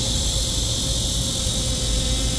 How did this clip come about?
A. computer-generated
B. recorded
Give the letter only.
B